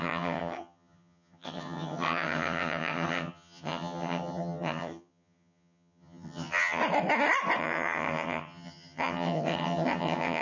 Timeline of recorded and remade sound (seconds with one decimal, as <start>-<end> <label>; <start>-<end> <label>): 0.0-6.8 remade; 6.8-7.6 recorded; 7.6-10.4 remade